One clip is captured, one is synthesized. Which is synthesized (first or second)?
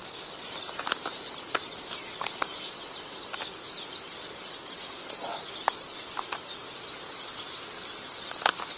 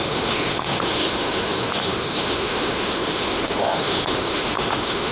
second